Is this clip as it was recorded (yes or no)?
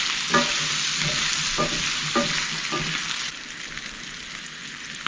yes